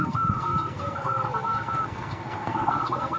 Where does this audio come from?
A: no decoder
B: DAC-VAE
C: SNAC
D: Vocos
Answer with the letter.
C